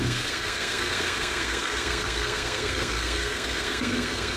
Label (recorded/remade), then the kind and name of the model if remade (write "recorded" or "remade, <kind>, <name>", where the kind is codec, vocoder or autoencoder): remade, codec, SNAC